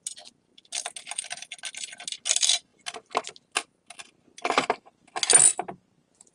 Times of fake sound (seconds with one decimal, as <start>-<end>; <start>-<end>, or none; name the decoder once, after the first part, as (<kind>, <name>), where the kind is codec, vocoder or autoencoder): none